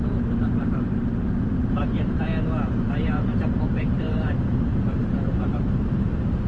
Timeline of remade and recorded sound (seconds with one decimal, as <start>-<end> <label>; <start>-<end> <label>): 0.0-2.3 remade; 2.3-3.1 recorded; 3.1-6.5 remade